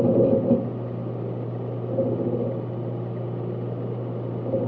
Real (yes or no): yes